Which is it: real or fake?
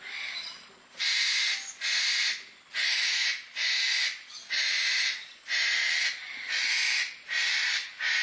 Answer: real